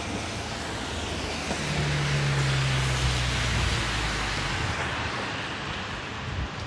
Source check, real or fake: real